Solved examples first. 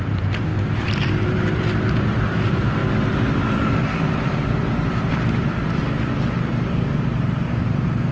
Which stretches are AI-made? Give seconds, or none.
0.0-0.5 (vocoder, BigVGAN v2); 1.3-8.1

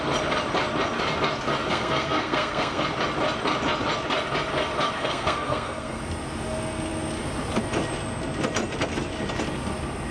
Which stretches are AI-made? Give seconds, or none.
1.7-2.8 (codec, SNAC); 5.0-6.0